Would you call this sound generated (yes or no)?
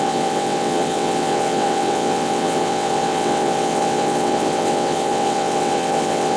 yes